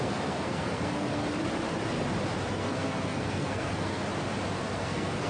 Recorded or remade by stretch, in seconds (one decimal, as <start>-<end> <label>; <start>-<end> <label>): 0.0-1.2 remade; 1.2-2.5 recorded; 2.5-4.0 remade; 4.0-4.6 recorded; 4.6-5.3 remade